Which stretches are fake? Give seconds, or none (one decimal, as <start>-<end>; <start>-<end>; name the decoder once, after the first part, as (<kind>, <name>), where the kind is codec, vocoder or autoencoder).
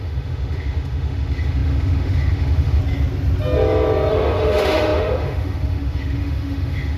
0.0-2.8 (autoencoder, DAC-VAE); 4.1-7.0